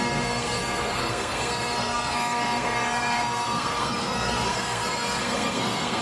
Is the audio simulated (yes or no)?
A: yes